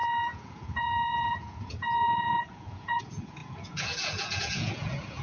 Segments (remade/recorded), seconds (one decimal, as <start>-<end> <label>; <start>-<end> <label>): 0.0-5.2 remade